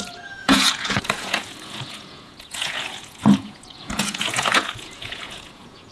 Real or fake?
fake